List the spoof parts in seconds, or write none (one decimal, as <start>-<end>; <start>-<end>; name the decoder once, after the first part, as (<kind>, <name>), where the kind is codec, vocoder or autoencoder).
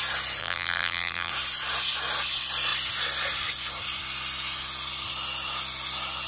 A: 0.4-1.3 (vocoder, BigVGAN v2)